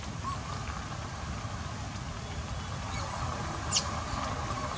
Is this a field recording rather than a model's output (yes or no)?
yes